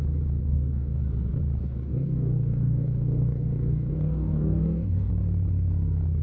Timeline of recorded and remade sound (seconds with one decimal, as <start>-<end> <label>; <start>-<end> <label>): 0.0-0.4 recorded; 0.4-1.0 remade; 1.0-1.6 recorded; 1.6-5.1 remade; 5.1-6.2 recorded